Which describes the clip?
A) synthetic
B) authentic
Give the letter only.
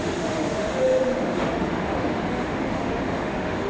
A